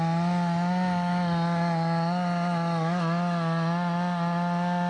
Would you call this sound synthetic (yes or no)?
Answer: no